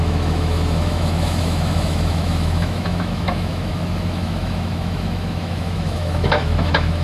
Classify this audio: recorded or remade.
remade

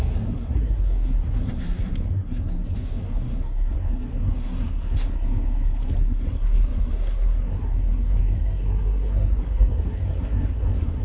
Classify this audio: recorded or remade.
remade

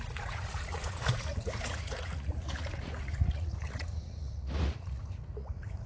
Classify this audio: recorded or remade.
remade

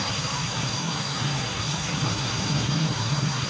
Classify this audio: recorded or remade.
remade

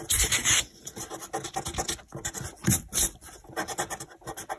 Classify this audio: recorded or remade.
remade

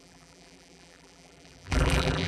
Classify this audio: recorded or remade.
remade